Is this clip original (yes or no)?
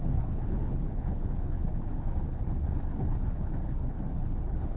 no